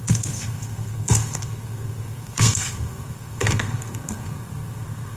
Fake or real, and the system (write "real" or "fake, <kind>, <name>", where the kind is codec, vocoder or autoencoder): fake, codec, SNAC